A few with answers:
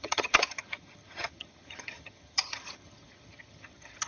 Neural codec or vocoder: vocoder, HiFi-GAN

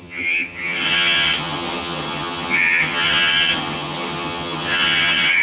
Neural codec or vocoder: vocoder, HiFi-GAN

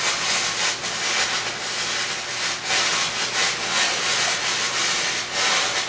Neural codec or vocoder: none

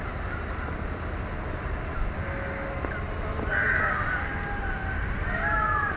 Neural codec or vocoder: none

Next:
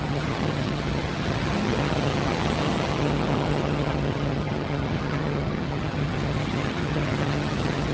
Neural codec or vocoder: vocoder, HiFi-GAN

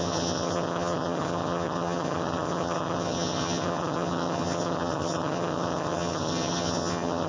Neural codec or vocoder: vocoder, HiFi-GAN